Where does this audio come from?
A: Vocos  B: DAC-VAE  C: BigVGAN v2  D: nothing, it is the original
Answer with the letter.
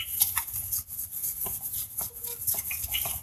D